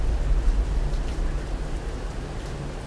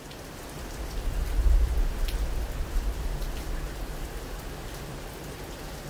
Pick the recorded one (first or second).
first